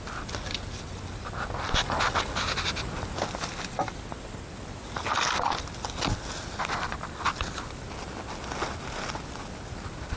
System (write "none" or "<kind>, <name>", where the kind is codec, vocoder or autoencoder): none